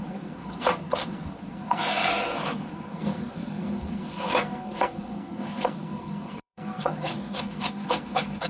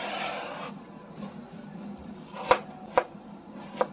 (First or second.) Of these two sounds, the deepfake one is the first